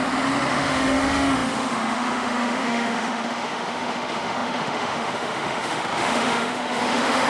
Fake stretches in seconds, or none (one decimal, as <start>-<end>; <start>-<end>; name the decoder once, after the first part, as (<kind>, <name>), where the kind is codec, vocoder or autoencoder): 0.5-7.3 (autoencoder, DAC-VAE)